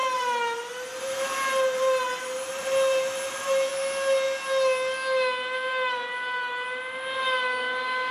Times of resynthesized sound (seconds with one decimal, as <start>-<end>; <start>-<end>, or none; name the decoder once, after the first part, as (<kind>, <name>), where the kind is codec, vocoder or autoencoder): 1.0-3.7 (vocoder, BigVGAN v2)